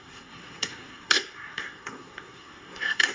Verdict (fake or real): fake